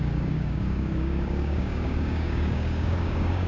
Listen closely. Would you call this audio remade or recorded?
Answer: remade